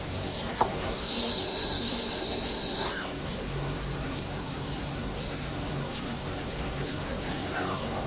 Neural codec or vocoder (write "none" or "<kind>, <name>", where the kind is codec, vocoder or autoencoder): codec, SNAC